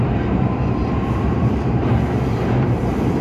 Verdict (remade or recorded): remade